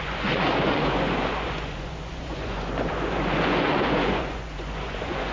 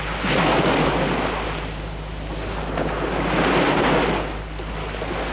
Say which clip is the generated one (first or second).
first